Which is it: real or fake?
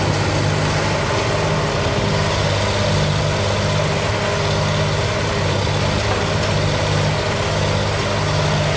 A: real